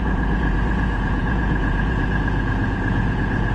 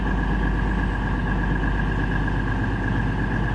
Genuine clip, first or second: second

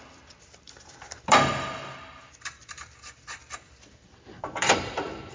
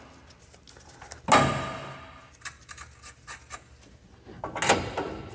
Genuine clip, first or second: second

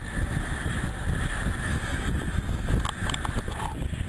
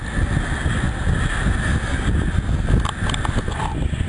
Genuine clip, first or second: second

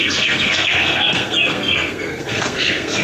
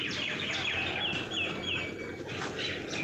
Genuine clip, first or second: second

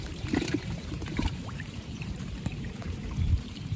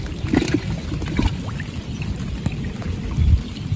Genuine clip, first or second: second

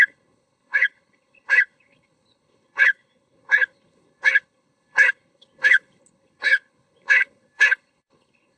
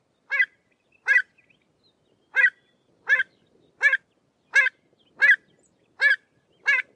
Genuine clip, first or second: second